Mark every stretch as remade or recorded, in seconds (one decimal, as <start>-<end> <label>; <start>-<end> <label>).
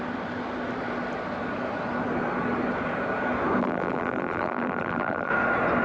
0.0-3.6 recorded; 3.6-5.3 remade; 5.3-5.8 recorded